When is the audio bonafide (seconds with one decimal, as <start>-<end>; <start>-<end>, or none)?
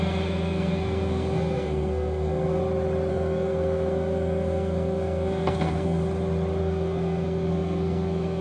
2.6-3.1; 6.0-6.6